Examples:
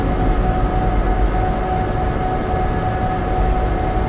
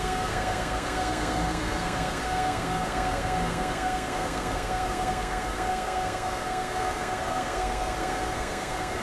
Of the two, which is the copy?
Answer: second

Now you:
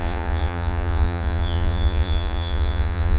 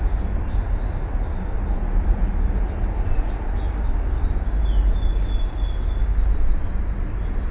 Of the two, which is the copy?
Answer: first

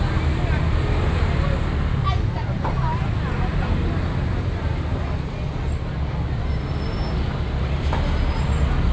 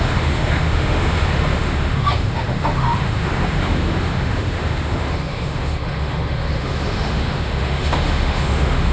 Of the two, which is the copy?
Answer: second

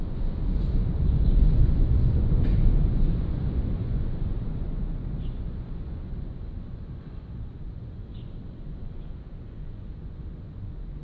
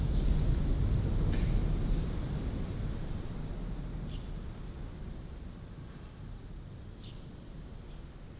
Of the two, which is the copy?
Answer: first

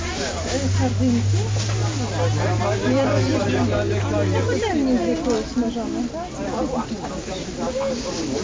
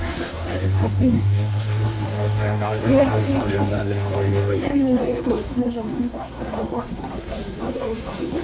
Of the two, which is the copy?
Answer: second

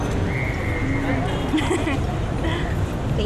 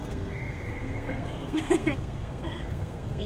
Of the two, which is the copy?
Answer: second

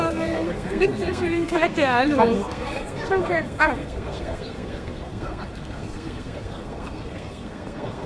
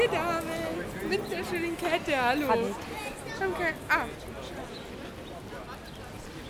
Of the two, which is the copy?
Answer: first